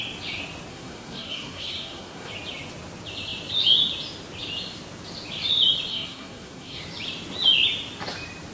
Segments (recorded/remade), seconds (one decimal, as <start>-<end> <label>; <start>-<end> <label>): 0.0-0.7 recorded; 0.7-2.3 remade; 2.3-5.9 recorded; 5.9-6.8 remade; 6.8-8.5 recorded

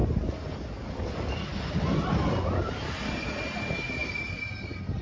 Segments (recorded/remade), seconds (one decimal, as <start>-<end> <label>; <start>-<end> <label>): 0.0-5.0 recorded